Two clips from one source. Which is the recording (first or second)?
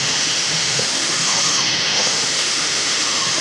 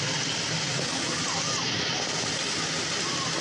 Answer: second